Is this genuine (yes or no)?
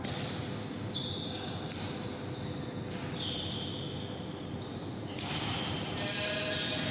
yes